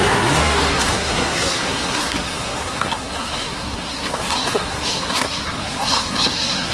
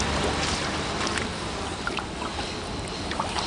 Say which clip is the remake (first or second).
first